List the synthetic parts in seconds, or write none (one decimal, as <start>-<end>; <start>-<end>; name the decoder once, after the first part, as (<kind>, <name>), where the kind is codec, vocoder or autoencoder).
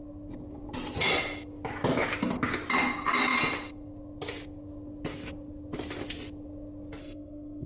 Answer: 7.0-7.7 (codec, SNAC)